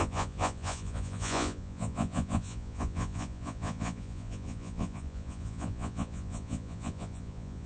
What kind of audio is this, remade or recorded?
remade